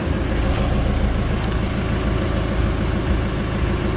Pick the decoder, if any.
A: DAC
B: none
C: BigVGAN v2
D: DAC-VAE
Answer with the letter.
B